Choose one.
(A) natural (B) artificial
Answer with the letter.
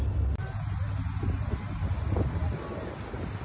A